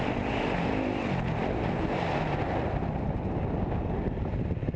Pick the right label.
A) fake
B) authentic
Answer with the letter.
B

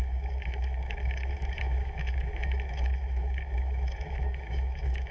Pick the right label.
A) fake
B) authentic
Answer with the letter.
A